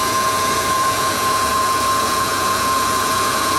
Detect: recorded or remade remade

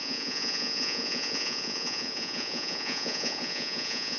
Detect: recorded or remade remade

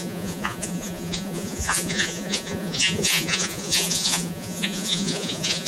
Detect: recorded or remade remade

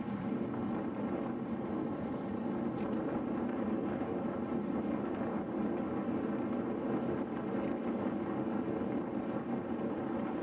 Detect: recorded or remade recorded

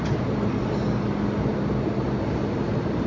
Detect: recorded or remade recorded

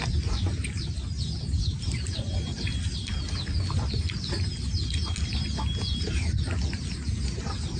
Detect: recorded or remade recorded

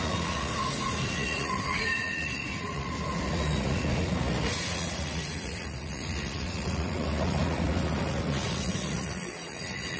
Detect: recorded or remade remade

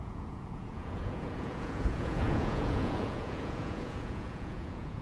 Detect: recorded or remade remade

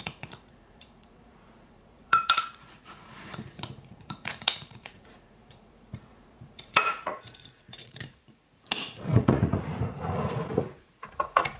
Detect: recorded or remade remade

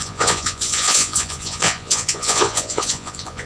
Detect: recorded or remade remade